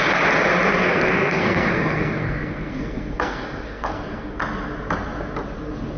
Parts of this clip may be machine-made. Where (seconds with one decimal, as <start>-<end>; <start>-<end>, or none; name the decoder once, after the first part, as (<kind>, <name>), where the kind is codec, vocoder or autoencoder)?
0.8-4.4 (codec, SNAC)